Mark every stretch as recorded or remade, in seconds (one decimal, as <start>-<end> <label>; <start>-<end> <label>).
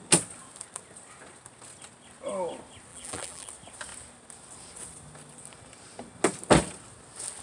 0.0-2.9 recorded; 2.9-3.5 remade; 3.5-7.4 recorded